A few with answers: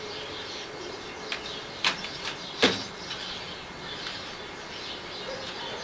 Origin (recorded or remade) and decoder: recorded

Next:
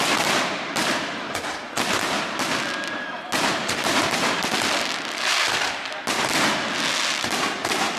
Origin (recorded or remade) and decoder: recorded